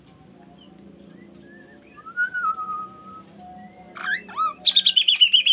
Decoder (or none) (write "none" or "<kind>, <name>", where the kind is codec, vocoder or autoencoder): vocoder, BigVGAN v2